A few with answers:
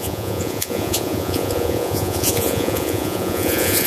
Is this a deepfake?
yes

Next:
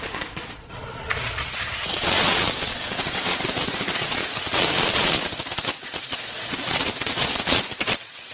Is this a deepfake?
yes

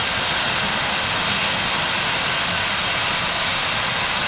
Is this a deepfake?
no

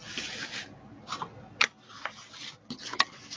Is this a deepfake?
no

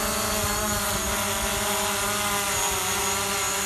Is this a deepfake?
no